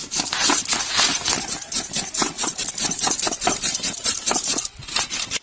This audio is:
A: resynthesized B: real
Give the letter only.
B